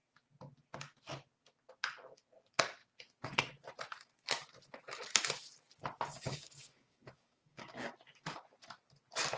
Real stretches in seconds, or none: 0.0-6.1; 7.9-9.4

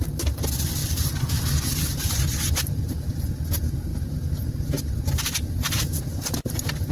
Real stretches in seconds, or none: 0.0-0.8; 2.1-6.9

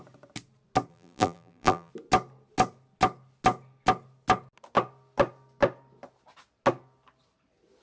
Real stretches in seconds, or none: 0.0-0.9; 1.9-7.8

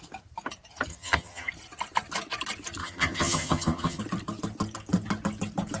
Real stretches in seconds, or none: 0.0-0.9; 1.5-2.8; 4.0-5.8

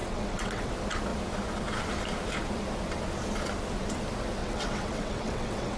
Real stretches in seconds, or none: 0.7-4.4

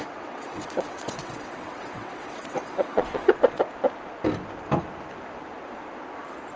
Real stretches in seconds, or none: 3.6-6.6